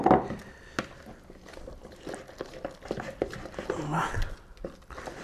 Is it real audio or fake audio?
real